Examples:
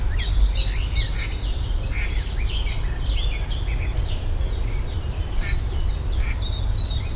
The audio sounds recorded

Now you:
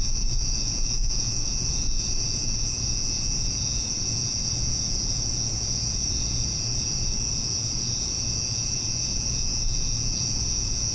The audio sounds remade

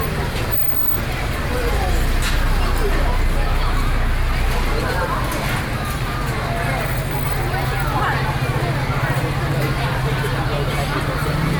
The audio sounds recorded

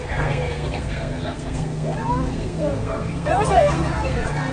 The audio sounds remade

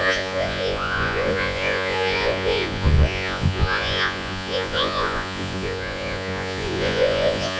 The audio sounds remade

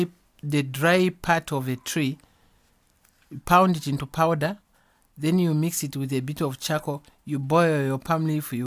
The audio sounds recorded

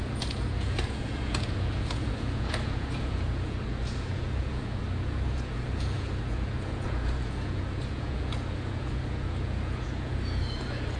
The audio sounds remade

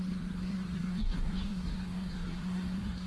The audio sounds remade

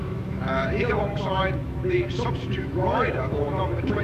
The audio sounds remade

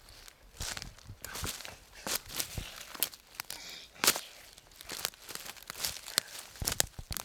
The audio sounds recorded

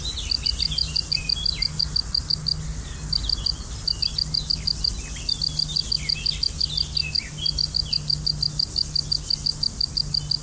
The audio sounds recorded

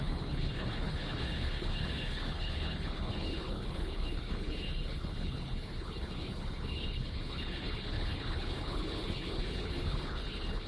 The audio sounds remade